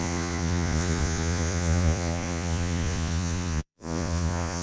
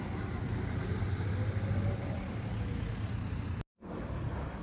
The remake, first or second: first